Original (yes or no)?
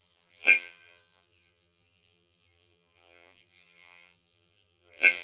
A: no